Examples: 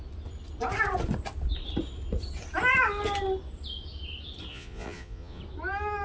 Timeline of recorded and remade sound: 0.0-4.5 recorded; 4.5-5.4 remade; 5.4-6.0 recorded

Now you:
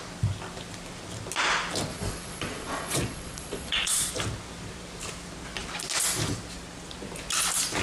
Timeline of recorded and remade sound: 0.0-1.9 recorded; 1.9-4.1 remade; 4.1-7.8 recorded

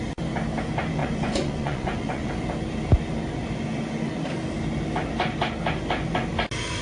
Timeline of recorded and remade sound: 0.0-1.0 recorded; 1.0-2.3 remade; 2.3-6.8 recorded

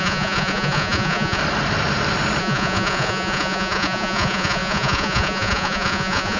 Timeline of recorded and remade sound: 0.0-1.4 remade; 1.4-2.4 recorded; 2.4-6.4 remade

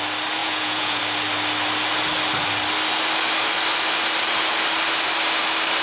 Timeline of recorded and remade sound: 0.0-0.4 recorded; 0.4-1.0 remade; 1.0-5.8 recorded